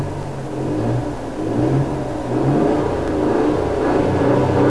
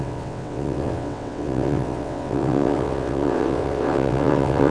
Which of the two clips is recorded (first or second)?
first